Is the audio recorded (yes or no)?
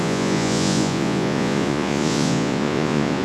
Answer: no